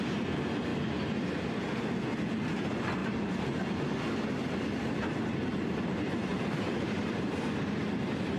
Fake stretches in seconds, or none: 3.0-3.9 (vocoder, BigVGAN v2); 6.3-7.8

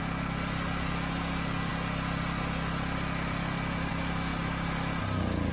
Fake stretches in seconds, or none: none